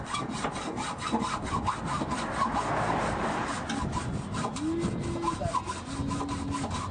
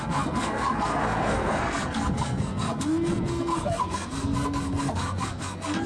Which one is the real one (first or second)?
first